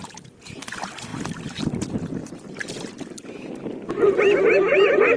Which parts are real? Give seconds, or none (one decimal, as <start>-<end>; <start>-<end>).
0.0-5.2